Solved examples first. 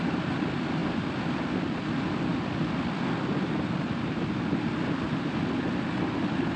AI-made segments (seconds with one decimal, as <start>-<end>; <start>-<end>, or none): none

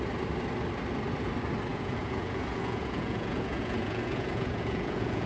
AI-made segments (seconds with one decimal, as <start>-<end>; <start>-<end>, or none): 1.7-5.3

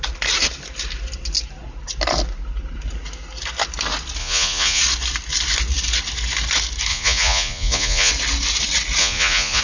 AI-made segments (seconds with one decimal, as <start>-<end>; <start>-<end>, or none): 4.2-4.8; 6.9-8.1; 9.0-9.6